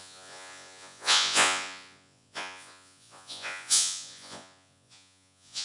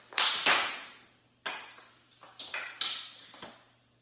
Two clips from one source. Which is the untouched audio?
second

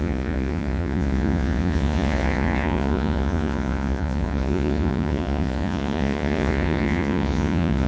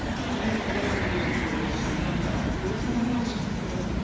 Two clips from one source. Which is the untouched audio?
second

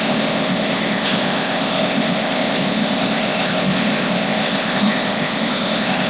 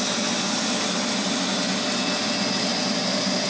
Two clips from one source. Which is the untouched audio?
second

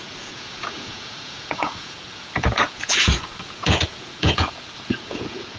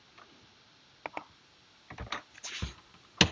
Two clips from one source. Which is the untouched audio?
second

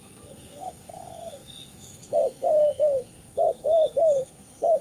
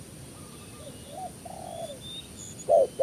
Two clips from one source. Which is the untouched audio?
second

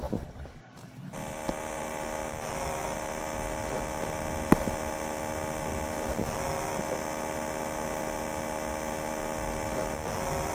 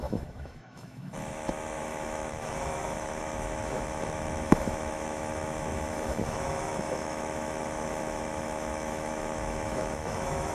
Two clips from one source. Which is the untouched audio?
first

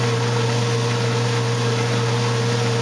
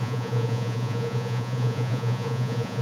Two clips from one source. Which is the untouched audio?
first